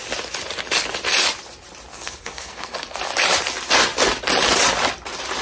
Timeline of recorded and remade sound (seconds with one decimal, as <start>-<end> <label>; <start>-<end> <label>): 0.0-1.9 recorded; 1.9-3.0 remade; 3.0-5.4 recorded